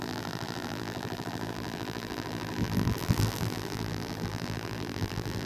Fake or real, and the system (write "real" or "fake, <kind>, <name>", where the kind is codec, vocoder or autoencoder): fake, vocoder, BigVGAN v2